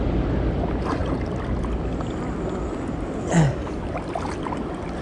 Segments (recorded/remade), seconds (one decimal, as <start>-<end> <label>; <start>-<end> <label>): 0.0-5.0 recorded